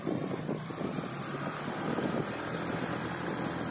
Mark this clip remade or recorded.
remade